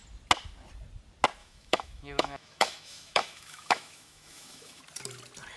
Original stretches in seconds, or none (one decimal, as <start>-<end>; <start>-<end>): 0.0-1.4; 4.8-5.6